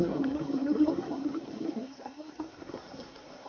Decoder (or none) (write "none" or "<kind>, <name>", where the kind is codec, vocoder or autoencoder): codec, SNAC